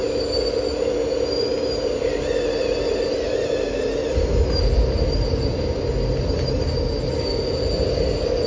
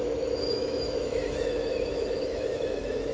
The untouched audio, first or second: first